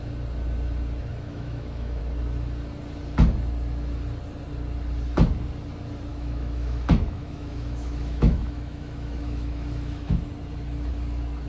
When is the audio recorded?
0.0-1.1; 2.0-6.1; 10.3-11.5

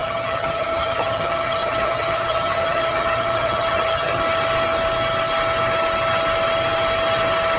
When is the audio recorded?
4.2-7.6

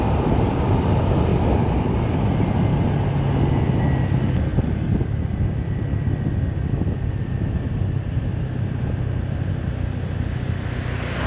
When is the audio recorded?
0.0-1.3; 1.9-4.5; 6.8-11.3

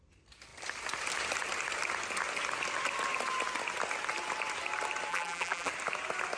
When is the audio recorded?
0.0-5.1; 5.7-6.4

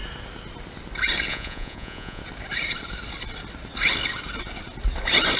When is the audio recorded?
0.0-1.3; 2.2-5.4